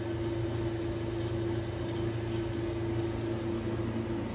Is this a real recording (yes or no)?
yes